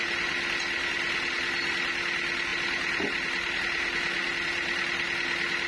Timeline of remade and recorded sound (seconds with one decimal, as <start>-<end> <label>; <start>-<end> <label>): 0.0-5.7 recorded